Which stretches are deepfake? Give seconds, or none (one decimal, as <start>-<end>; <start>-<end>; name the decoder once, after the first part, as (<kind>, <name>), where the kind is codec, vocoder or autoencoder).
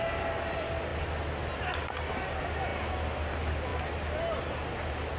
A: none